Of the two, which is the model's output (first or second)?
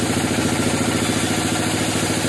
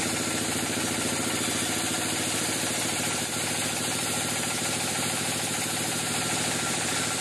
second